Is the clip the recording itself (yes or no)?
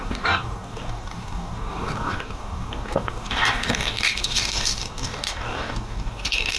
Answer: no